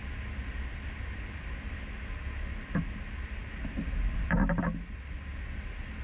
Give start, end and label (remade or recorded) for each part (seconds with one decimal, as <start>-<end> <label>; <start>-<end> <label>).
0.0-6.0 recorded

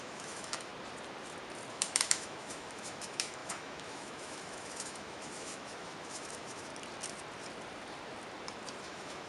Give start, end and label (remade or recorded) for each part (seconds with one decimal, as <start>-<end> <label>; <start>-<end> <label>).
0.0-0.7 remade; 0.7-1.7 recorded; 1.7-6.7 remade; 6.7-8.8 recorded; 8.8-9.3 remade

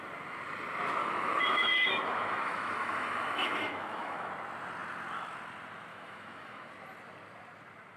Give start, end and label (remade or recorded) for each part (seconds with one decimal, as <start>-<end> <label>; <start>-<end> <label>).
0.0-1.0 recorded; 1.0-4.3 remade; 4.3-5.9 recorded; 5.9-6.7 remade; 6.7-8.0 recorded

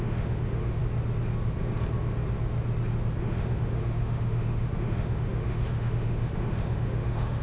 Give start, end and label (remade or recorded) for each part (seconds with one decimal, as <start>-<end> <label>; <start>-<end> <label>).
0.0-0.8 remade; 0.8-3.2 recorded; 3.2-7.4 remade